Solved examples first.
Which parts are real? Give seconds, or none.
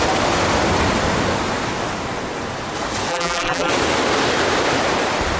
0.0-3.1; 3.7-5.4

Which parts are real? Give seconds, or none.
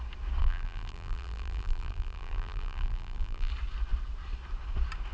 0.0-0.4; 3.5-5.1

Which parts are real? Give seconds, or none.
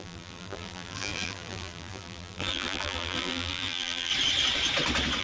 4.1-5.2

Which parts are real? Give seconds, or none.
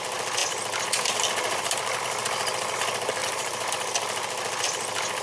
0.0-3.2; 3.7-5.2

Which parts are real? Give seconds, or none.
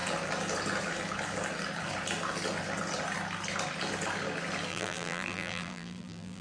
0.0-4.7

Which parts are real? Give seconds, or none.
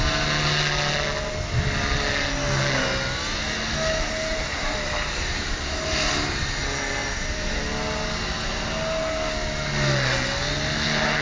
0.0-4.3; 6.4-7.0; 7.6-11.2